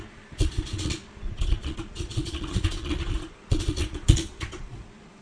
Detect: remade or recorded remade